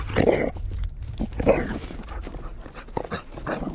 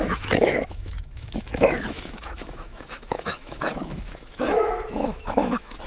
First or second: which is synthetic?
second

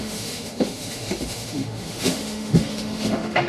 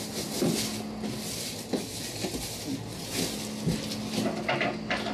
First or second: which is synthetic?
first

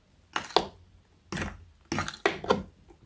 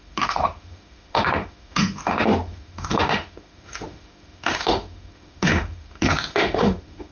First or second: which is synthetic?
second